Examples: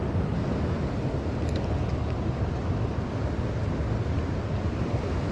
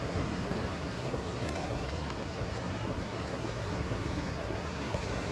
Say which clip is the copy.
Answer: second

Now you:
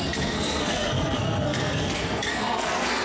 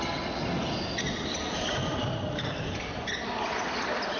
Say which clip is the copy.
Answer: first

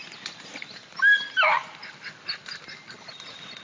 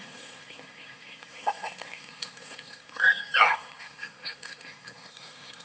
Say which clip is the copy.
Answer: second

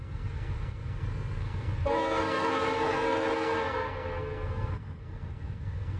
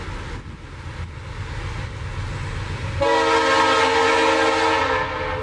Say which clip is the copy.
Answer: first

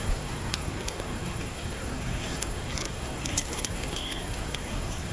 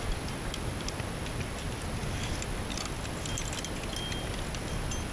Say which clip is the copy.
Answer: first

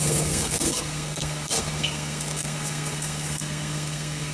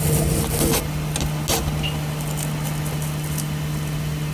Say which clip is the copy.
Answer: first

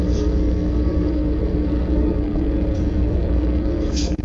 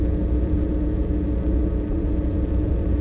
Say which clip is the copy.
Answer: first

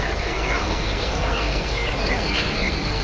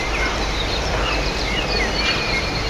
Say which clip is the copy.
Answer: first